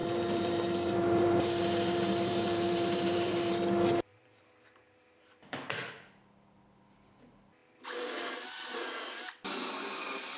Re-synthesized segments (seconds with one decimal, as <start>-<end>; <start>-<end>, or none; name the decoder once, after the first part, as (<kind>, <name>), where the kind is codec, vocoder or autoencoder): 0.0-3.5 (vocoder, BigVGAN v2); 4.1-5.9